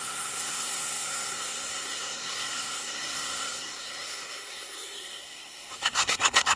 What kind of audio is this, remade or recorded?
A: remade